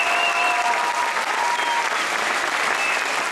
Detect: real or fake real